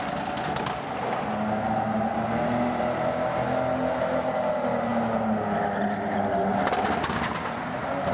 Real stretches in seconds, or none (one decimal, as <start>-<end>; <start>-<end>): 0.0-8.1